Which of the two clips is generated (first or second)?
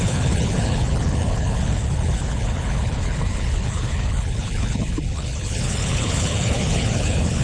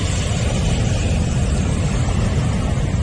first